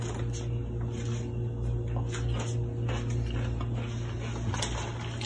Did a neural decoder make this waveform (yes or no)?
no